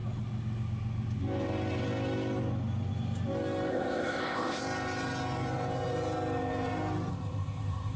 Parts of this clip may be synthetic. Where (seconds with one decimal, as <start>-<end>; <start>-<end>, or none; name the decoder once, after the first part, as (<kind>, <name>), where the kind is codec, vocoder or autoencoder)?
3.7-4.6 (codec, ZipCodec); 7.1-8.0